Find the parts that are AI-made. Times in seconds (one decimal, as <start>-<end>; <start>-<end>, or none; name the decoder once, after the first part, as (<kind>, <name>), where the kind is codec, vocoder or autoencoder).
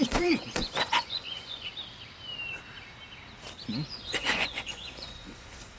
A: 0.0-1.7 (vocoder, Vocos); 3.7-5.8